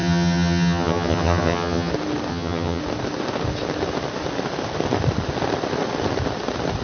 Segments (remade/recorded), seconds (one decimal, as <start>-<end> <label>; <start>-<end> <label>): 0.0-1.9 remade; 1.9-2.3 recorded; 2.3-2.8 remade; 2.8-6.8 recorded